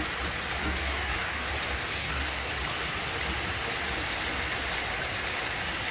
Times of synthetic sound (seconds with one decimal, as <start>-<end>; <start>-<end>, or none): 0.6-1.5; 1.9-2.5